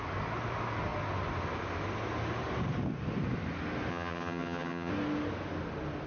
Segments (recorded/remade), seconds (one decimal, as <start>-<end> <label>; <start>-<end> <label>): 0.0-3.9 recorded; 3.9-4.9 remade; 4.9-6.1 recorded